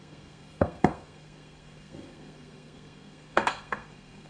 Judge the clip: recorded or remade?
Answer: remade